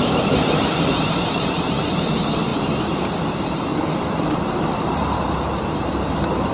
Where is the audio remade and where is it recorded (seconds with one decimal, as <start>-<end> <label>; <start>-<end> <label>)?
0.0-6.5 remade